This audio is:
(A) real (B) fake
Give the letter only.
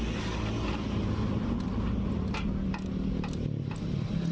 A